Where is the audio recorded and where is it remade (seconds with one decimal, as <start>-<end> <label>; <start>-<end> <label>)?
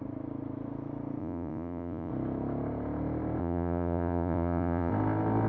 0.0-1.2 recorded; 1.2-2.1 remade; 2.1-3.4 recorded; 3.4-4.9 remade; 4.9-5.5 recorded